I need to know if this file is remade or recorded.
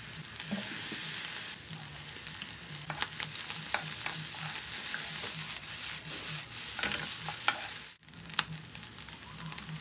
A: recorded